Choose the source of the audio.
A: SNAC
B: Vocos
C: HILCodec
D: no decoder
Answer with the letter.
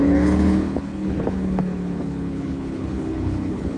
C